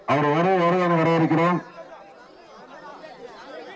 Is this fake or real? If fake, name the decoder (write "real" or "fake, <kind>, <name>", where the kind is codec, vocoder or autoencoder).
real